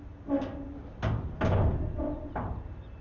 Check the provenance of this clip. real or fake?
real